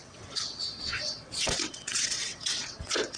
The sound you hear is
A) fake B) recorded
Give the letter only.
A